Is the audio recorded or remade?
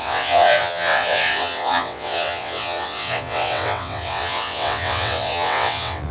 remade